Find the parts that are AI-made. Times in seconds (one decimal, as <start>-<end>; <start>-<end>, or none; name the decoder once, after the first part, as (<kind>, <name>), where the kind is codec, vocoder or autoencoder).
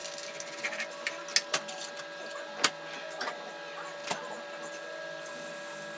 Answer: none